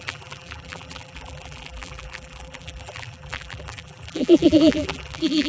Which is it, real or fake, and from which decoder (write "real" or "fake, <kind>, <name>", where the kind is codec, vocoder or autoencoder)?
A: fake, vocoder, BigVGAN v2